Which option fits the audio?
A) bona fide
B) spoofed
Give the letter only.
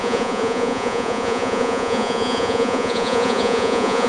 B